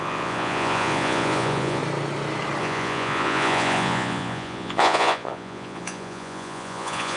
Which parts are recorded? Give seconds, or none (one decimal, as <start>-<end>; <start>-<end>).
1.8-2.6